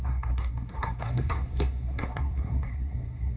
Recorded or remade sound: remade